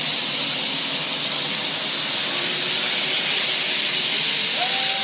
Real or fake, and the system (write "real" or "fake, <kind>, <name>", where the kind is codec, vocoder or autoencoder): real